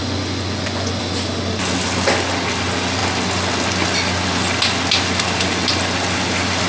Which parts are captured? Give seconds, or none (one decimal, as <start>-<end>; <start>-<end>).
1.0-6.7